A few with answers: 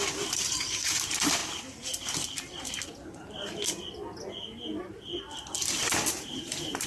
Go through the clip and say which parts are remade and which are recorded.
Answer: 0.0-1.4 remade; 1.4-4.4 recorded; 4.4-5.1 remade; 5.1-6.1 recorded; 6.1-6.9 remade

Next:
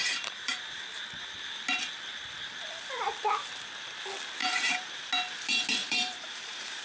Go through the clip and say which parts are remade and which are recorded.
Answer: 0.0-0.8 remade; 0.8-4.4 recorded; 4.4-5.1 remade; 5.1-5.8 recorded; 5.8-6.8 remade

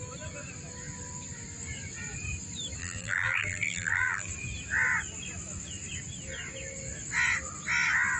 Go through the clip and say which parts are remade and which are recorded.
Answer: 0.0-2.8 recorded; 2.8-4.3 remade; 4.3-8.2 recorded

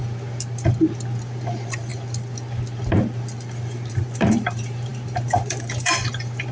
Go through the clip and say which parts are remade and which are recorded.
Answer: 0.0-1.2 recorded; 1.2-1.9 remade; 1.9-3.9 recorded; 3.9-6.5 remade

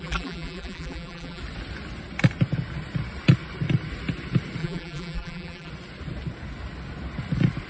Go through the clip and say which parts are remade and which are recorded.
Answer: 0.0-1.4 remade; 1.4-4.6 recorded; 4.6-5.7 remade; 5.7-7.7 recorded

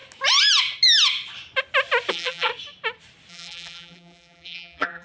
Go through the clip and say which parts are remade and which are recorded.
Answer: 0.0-2.1 recorded; 2.1-2.5 remade; 2.5-3.3 recorded; 3.3-5.0 remade